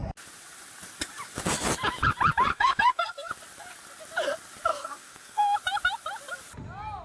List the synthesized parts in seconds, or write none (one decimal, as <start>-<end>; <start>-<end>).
2.5-3.3; 4.7-5.4